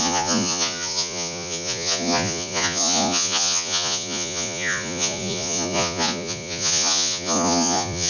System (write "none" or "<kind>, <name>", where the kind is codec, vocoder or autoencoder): vocoder, Vocos